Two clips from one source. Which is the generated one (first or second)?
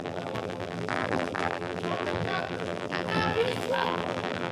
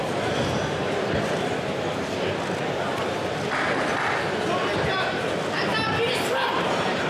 first